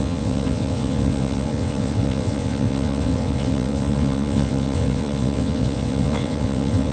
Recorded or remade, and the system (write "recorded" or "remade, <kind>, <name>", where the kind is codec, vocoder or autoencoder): remade, vocoder, WaveNeXt